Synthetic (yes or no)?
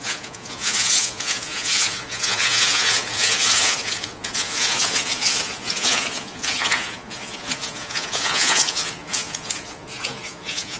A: yes